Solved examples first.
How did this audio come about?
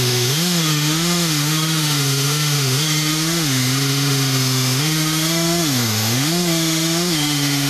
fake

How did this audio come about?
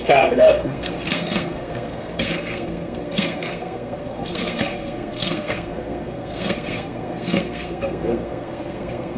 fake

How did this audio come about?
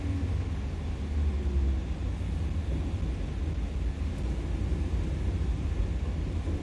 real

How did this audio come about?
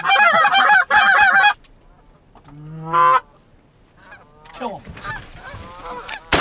real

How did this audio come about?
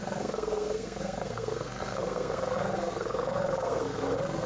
fake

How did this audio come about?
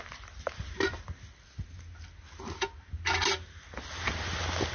real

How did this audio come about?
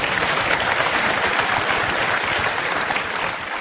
real